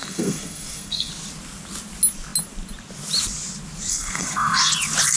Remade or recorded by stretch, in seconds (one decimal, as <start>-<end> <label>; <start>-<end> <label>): 0.0-1.1 remade; 1.1-3.9 recorded; 3.9-4.7 remade; 4.7-5.2 recorded